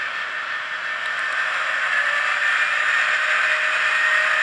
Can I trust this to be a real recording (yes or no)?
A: yes